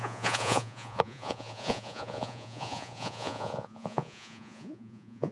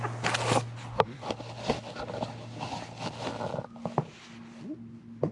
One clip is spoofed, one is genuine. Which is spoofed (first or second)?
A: first